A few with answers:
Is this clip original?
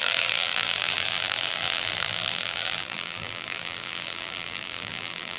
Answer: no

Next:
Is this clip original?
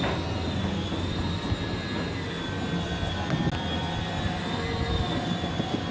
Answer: yes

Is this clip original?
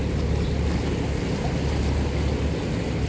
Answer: yes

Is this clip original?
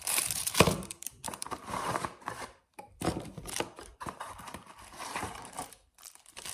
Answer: no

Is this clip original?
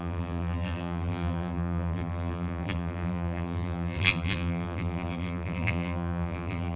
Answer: no